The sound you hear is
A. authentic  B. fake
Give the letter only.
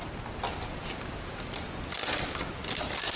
A